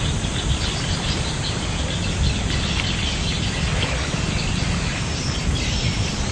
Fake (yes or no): no